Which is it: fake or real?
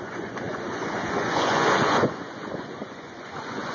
fake